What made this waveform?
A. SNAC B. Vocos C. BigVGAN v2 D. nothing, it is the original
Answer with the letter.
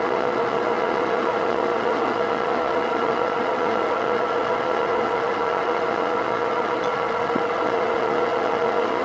B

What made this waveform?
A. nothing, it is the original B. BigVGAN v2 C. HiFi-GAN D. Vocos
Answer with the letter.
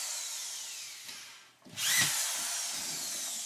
A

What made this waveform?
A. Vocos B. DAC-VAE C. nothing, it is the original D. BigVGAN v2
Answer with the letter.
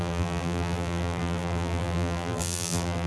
D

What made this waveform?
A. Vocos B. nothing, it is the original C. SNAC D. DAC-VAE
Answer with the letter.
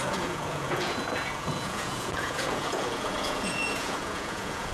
A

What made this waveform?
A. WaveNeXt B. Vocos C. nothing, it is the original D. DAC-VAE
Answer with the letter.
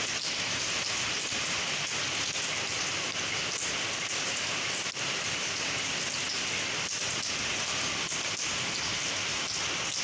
C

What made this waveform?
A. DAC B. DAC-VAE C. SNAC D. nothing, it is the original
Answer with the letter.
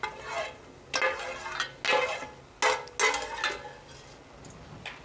D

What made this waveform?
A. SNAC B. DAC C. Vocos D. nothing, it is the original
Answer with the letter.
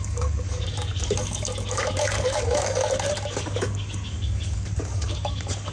B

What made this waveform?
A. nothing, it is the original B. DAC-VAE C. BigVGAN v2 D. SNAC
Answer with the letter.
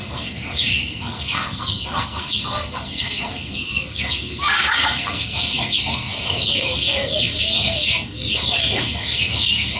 D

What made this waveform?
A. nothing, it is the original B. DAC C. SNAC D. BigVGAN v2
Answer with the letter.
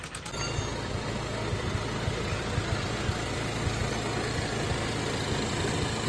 A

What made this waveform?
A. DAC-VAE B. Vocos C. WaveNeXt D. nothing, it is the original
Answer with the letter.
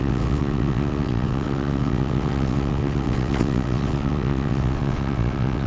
C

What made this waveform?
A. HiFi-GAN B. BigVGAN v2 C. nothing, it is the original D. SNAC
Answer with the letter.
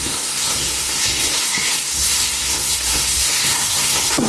D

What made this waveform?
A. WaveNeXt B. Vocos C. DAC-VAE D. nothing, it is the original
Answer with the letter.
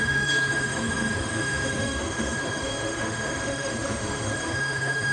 C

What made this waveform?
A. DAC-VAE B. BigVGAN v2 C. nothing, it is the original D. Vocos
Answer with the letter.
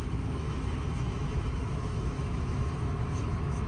A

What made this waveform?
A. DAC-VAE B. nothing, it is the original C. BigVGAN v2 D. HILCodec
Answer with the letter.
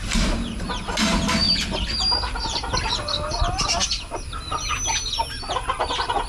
B